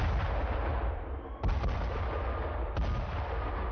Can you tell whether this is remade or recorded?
recorded